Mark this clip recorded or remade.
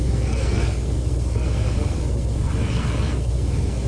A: remade